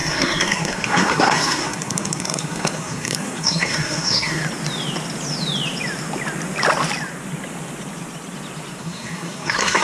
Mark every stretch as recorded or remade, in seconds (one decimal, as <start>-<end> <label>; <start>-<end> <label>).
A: 0.0-4.4 remade; 4.4-8.8 recorded; 8.8-9.8 remade